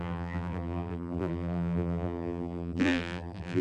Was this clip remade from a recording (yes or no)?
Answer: yes